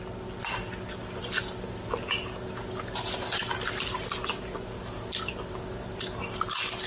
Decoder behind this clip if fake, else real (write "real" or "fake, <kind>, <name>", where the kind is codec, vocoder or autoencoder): real